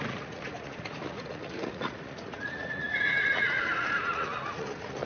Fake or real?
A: fake